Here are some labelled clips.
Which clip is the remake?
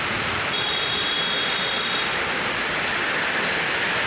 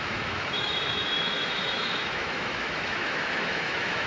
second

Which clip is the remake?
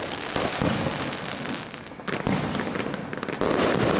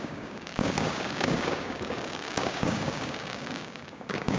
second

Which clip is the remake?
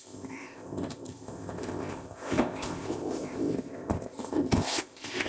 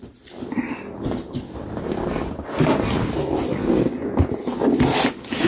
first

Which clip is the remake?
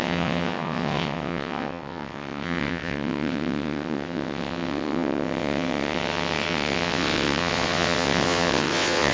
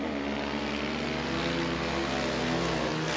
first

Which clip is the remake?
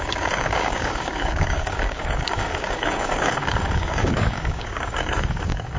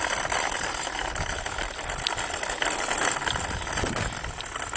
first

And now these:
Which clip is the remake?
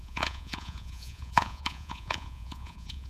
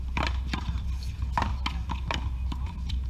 first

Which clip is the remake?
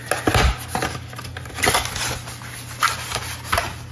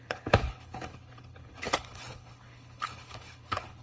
second